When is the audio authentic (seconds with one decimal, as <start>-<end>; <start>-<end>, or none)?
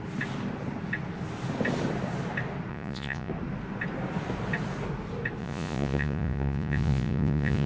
0.0-2.7; 3.3-5.4